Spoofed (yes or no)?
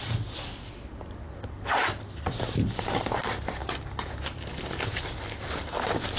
yes